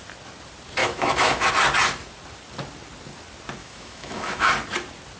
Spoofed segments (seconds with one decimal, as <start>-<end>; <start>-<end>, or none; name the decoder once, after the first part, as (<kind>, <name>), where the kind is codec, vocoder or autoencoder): 0.8-1.5 (autoencoder, DAC-VAE); 3.6-4.5